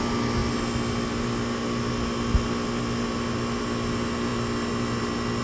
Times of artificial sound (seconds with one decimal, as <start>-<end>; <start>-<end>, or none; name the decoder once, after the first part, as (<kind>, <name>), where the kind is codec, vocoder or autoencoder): none